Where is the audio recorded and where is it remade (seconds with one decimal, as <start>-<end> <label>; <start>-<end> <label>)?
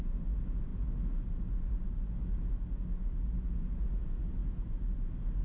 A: 0.0-5.4 recorded